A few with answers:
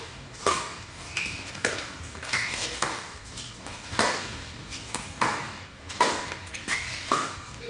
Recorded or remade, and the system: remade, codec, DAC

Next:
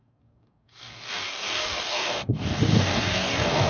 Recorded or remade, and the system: remade, codec, DAC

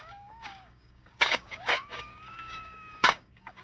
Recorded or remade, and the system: remade, codec, DAC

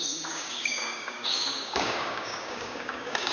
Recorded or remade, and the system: remade, codec, DAC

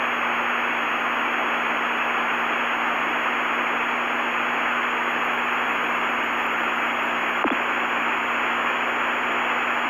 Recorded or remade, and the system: recorded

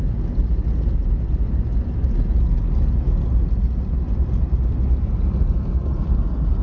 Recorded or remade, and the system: recorded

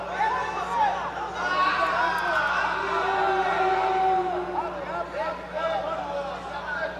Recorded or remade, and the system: recorded